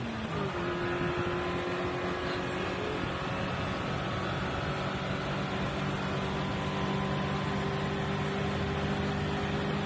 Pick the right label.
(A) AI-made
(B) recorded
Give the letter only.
B